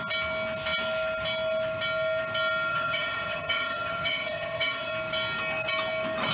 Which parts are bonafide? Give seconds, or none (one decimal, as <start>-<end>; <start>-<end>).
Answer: 0.0-2.7; 4.9-6.3